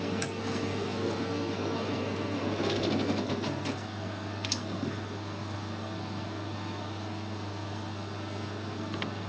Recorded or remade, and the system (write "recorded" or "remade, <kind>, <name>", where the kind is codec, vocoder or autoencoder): remade, codec, SNAC